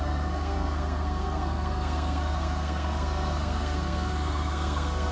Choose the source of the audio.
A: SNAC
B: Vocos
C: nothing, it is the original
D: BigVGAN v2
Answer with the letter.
A